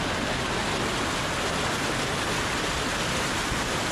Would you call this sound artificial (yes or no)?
no